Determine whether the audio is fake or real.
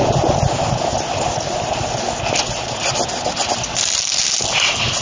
real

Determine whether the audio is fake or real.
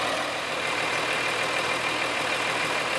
real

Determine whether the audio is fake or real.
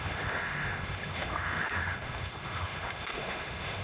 fake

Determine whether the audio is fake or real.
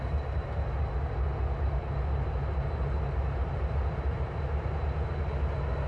real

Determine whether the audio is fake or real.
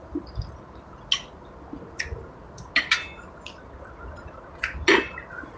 real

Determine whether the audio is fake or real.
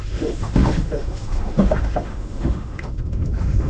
fake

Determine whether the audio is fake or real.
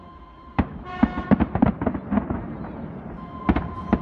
real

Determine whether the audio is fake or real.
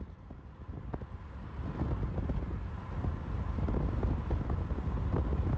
real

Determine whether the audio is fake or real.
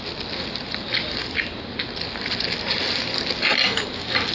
real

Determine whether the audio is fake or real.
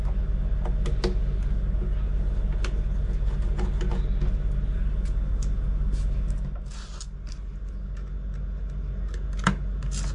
real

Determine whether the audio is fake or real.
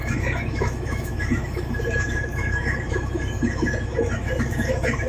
fake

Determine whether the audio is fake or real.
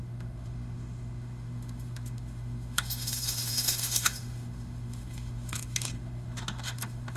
fake